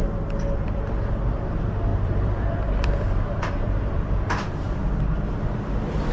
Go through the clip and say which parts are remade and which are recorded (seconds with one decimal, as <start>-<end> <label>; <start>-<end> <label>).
0.0-1.9 recorded; 1.9-5.0 remade; 5.0-6.1 recorded